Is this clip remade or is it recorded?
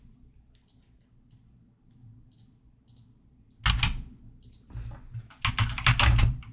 recorded